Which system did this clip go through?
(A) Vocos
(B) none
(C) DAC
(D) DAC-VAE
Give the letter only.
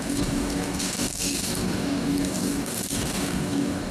C